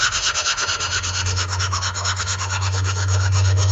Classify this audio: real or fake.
fake